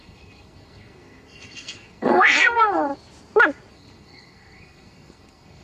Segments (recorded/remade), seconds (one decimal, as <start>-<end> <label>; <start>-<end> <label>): 0.0-2.9 remade; 2.9-3.7 recorded; 3.7-5.6 remade